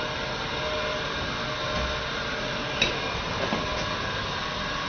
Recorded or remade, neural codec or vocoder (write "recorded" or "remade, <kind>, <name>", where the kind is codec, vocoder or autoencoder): recorded